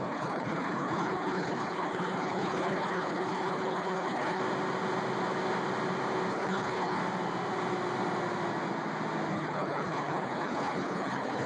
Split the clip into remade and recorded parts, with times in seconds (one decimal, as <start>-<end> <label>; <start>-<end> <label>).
0.0-4.4 remade; 4.4-6.3 recorded; 6.3-7.0 remade; 7.0-9.3 recorded; 9.3-11.5 remade